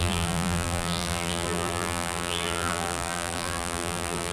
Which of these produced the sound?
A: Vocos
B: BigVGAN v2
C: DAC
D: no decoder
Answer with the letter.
B